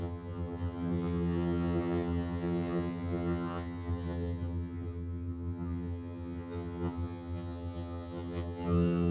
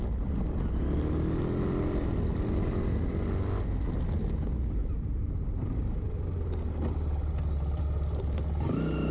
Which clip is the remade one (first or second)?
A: first